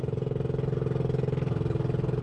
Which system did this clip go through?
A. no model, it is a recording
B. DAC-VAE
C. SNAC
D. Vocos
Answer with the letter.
A